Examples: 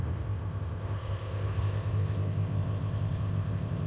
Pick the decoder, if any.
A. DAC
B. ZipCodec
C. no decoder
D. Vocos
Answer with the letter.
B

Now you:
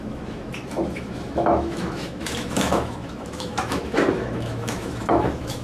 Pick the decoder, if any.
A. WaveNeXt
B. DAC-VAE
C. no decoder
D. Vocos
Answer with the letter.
B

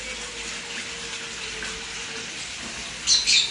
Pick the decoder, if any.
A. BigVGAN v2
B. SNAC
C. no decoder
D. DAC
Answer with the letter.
C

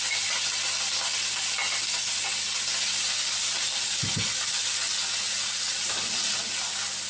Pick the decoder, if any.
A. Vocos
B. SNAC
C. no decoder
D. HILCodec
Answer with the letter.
C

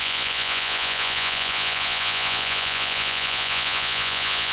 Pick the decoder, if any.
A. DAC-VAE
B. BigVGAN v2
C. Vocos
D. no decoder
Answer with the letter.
C